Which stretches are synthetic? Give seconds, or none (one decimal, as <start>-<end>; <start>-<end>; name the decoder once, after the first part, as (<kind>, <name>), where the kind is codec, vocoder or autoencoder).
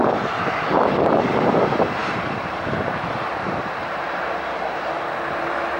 2.0-3.6 (vocoder, BigVGAN v2)